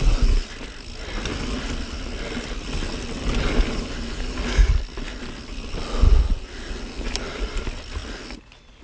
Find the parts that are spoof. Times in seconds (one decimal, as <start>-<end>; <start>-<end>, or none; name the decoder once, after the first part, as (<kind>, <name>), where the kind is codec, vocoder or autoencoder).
none